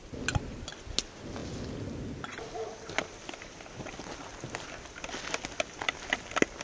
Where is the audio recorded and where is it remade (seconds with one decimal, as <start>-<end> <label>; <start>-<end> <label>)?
0.0-6.6 recorded